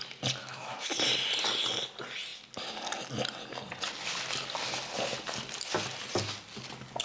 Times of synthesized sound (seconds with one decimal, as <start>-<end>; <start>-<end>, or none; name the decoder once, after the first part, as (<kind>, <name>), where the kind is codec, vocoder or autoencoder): 0.4-0.9 (autoencoder, DAC-VAE)